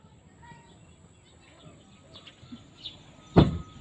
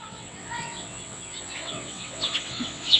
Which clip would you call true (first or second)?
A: first